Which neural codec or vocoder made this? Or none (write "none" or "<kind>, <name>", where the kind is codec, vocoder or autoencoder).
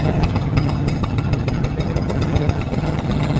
vocoder, HiFi-GAN